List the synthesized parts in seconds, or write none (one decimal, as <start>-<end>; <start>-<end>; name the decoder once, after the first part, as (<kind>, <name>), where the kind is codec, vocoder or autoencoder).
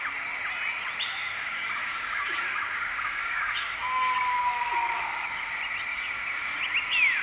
1.1-5.4 (codec, DAC); 5.9-6.6